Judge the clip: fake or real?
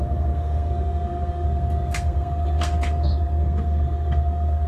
fake